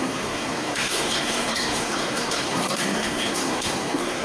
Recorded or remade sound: remade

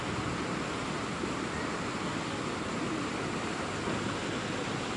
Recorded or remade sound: recorded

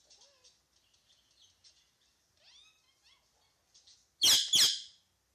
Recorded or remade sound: recorded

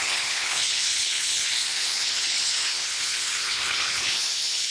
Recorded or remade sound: remade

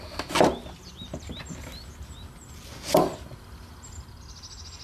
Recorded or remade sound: recorded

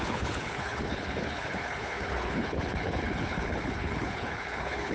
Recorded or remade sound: remade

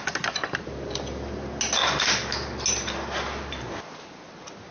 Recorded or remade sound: recorded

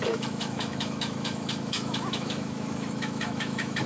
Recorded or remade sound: remade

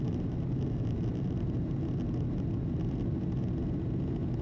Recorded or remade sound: recorded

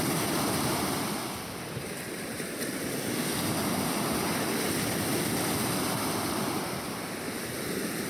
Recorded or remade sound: recorded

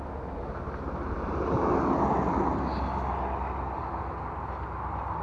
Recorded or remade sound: recorded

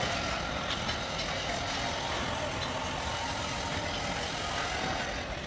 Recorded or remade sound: recorded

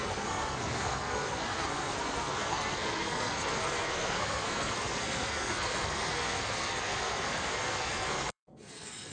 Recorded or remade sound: remade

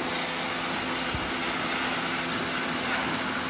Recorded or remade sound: recorded